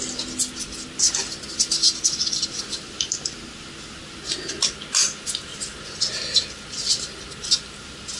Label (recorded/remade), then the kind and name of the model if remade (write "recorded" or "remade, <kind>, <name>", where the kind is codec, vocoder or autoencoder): recorded